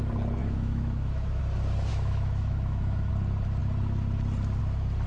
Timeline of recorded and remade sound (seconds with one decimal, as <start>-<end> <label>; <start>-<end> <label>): 0.0-0.4 recorded; 0.4-1.4 remade; 1.4-1.9 recorded; 1.9-3.1 remade; 3.1-5.1 recorded